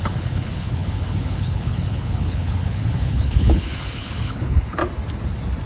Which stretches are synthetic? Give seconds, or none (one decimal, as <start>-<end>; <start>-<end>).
0.0-4.8